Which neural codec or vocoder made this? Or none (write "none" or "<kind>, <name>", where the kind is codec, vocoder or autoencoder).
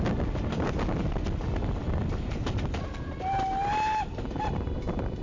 none